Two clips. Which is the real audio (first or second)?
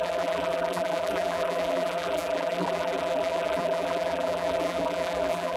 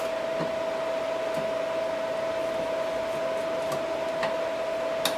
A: second